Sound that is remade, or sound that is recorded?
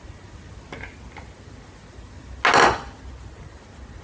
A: recorded